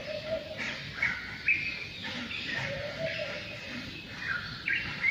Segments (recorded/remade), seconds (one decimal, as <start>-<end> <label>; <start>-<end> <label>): 0.0-0.7 remade; 0.7-2.0 recorded; 2.0-5.1 remade